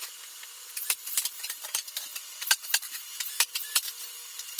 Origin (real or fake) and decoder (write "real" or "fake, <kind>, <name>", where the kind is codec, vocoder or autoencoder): fake, vocoder, BigVGAN v2